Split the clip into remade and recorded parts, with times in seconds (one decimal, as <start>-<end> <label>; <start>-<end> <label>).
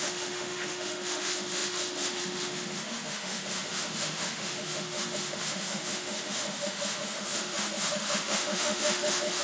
0.0-9.4 remade